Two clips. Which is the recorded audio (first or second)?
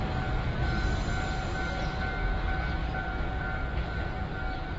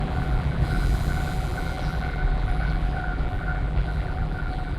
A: first